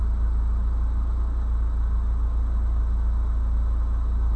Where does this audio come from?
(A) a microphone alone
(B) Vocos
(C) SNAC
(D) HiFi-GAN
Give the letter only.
A